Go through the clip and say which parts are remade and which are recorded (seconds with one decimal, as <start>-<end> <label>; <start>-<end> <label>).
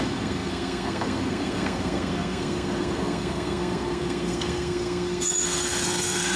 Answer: 0.0-6.4 remade